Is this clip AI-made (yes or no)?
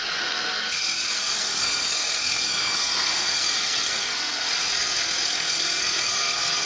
yes